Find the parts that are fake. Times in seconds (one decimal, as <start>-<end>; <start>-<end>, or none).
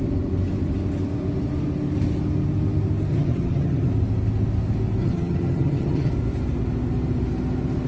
3.1-3.9; 5.0-6.1